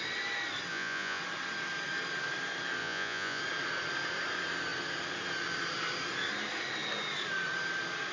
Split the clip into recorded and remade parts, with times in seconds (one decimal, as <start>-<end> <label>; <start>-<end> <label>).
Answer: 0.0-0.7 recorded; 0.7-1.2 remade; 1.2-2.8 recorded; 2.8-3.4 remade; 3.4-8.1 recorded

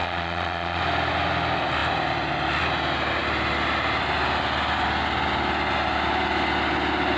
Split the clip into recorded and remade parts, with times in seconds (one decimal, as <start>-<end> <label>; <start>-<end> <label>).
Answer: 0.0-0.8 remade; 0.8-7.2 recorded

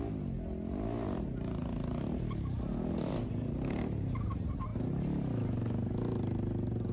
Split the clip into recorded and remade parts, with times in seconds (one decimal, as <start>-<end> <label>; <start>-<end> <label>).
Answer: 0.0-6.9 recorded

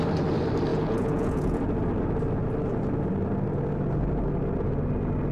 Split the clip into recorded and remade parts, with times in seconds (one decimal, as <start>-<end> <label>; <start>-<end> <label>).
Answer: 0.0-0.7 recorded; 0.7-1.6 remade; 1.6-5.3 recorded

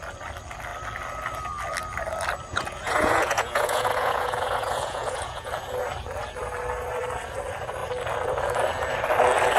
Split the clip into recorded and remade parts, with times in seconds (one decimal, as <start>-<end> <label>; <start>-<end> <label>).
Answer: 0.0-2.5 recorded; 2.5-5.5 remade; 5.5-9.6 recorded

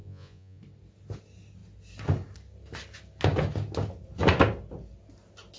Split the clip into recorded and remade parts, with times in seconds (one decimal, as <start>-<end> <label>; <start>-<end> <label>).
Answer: 0.0-0.6 remade; 0.6-5.6 recorded

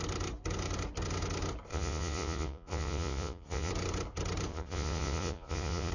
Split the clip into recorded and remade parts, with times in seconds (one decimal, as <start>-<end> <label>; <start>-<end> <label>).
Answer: 0.0-1.7 recorded; 1.7-3.7 remade; 3.7-4.5 recorded; 4.5-5.9 remade

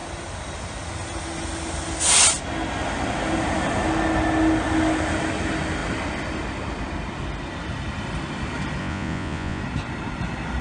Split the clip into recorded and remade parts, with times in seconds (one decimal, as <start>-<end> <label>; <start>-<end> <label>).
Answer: 0.0-8.8 recorded; 8.8-9.6 remade; 9.6-10.6 recorded